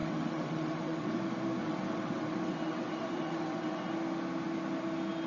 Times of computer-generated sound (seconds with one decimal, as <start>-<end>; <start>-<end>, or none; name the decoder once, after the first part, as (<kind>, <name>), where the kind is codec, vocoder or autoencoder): 0.0-1.2 (vocoder, WaveNeXt); 1.6-3.9